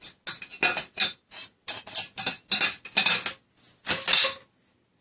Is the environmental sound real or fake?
real